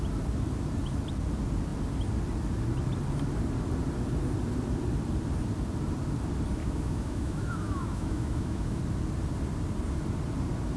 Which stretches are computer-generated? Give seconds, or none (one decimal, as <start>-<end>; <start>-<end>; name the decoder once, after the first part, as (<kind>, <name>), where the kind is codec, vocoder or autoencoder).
6.6-8.8 (autoencoder, DAC-VAE)